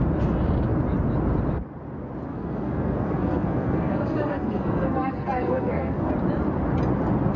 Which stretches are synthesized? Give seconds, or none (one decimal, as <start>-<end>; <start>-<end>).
2.3-6.1